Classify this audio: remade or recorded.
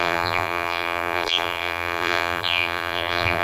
remade